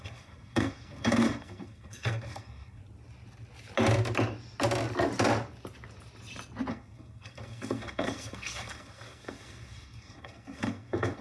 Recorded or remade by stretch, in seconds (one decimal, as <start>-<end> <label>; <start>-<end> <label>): 0.0-2.8 remade; 2.8-6.7 recorded; 6.7-11.2 remade